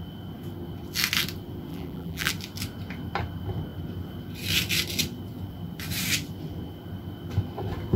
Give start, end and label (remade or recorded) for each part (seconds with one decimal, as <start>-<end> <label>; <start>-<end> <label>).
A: 0.0-1.7 recorded; 1.7-2.3 remade; 2.3-8.0 recorded